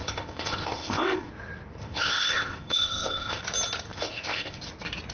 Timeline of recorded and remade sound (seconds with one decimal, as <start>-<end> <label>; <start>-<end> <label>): 0.0-1.3 remade; 1.3-1.8 recorded; 1.8-3.4 remade; 3.4-3.9 recorded; 3.9-4.6 remade; 4.6-5.1 recorded

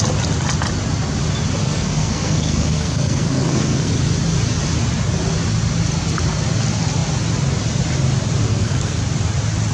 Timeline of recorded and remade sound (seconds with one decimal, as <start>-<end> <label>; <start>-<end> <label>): 0.0-1.6 recorded; 1.6-3.9 remade; 3.9-8.5 recorded; 8.5-9.0 remade; 9.0-9.7 recorded

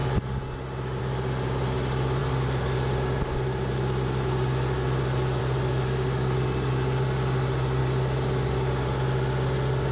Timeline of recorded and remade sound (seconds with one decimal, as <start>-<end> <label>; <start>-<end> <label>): 0.0-9.9 recorded

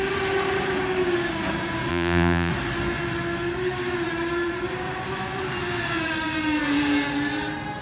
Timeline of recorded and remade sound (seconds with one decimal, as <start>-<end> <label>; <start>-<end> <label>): 0.0-1.9 recorded; 1.9-2.5 remade; 2.5-7.8 recorded

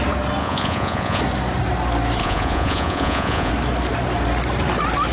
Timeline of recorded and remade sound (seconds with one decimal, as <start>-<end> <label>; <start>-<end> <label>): 0.0-0.4 recorded; 0.4-1.2 remade; 1.2-2.2 recorded; 2.2-3.5 remade; 3.5-5.1 recorded

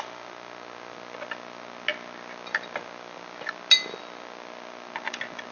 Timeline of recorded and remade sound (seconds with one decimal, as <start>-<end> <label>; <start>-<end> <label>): 0.0-5.5 recorded